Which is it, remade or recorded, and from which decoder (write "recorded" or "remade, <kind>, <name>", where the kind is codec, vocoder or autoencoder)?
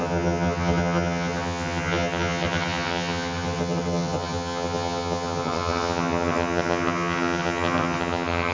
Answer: remade, vocoder, HiFi-GAN